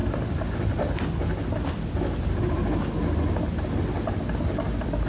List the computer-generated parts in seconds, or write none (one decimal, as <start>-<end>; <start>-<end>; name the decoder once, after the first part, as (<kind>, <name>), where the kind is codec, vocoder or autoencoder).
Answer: none